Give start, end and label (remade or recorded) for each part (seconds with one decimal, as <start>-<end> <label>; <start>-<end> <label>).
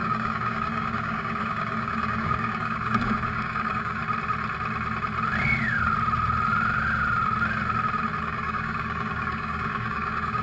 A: 0.0-4.0 remade; 4.0-8.2 recorded; 8.2-10.4 remade